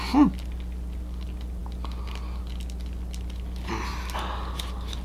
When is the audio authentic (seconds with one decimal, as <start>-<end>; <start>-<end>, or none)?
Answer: 0.0-5.0